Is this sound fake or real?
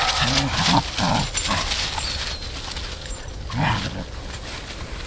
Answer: real